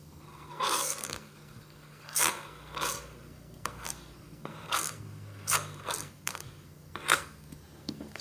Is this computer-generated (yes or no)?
yes